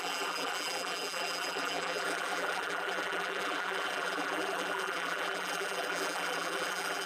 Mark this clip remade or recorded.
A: remade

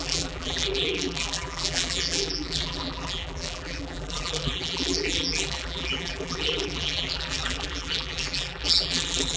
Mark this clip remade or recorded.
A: remade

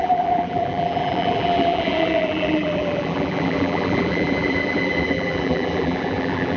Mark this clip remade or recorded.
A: remade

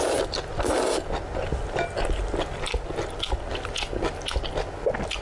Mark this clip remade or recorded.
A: recorded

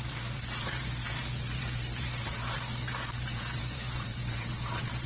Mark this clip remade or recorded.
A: remade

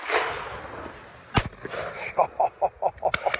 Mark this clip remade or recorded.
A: recorded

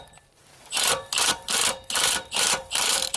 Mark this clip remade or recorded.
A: remade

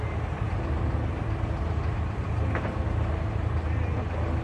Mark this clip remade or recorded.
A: recorded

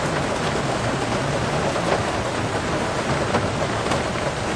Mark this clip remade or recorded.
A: recorded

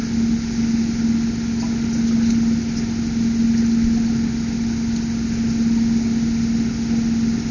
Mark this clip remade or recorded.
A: recorded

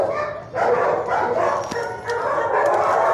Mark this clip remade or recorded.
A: recorded